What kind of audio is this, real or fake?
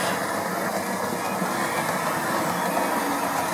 real